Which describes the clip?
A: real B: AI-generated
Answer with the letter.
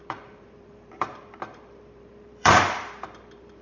B